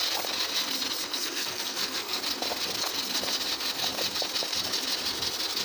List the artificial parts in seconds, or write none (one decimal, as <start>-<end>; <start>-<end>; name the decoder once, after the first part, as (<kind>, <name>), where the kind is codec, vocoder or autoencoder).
1.1-2.2 (codec, SNAC)